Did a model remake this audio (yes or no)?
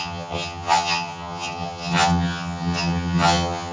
yes